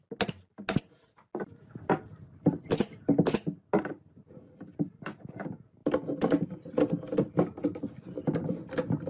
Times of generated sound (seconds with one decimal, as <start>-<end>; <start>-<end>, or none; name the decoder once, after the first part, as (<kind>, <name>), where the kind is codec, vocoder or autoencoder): none